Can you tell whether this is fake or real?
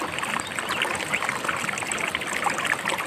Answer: real